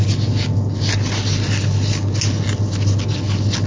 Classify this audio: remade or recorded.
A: recorded